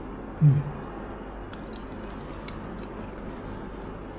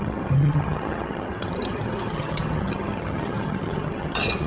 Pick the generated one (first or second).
second